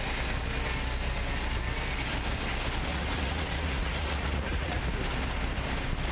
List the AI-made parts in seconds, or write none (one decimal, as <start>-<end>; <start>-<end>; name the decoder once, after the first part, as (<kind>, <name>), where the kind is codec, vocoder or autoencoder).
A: 2.9-4.8 (vocoder, Vocos)